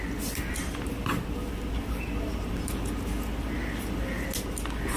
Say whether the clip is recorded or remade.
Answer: recorded